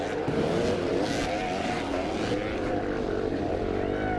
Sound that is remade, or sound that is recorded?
recorded